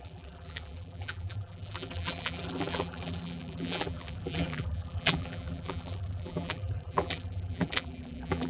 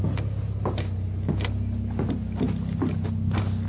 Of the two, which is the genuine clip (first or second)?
second